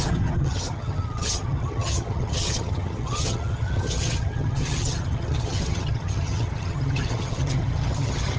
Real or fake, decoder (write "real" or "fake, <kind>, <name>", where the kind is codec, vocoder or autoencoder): fake, vocoder, HiFi-GAN